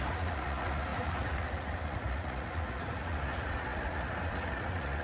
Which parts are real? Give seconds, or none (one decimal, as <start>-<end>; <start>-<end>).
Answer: none